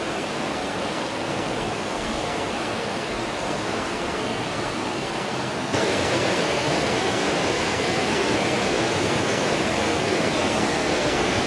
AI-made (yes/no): yes